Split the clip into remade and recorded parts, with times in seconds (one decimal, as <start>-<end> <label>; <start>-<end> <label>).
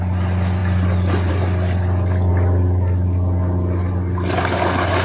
0.0-5.0 recorded